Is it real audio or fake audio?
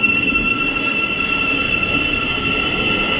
real